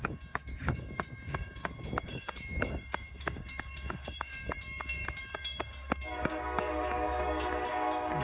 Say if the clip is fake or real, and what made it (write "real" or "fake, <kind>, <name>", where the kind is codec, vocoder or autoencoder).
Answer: fake, codec, DAC